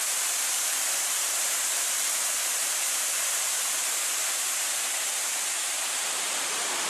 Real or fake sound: fake